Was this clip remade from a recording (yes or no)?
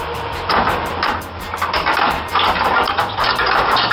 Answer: no